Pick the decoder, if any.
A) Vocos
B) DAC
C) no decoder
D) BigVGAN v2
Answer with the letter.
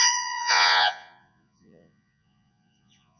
A